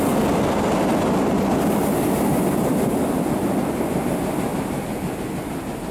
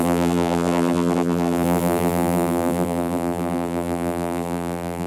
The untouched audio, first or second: first